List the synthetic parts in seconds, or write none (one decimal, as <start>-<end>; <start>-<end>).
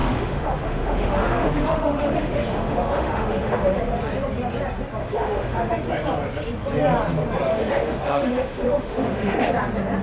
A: 0.0-3.8; 5.0-5.7; 7.5-9.5